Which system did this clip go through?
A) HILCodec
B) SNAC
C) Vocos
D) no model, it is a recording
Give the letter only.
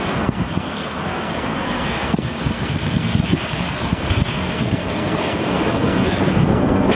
B